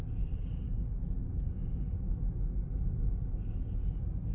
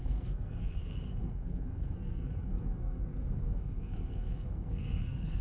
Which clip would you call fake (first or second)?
second